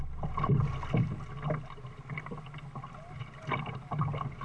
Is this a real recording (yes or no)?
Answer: yes